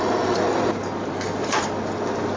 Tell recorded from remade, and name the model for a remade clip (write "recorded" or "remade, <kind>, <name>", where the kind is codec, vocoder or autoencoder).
recorded